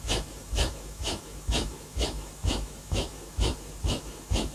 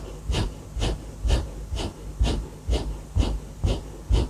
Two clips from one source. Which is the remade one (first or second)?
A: first